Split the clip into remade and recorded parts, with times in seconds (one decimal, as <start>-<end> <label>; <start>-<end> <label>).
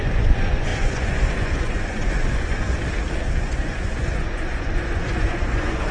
0.0-2.7 remade; 2.7-3.4 recorded; 3.4-5.9 remade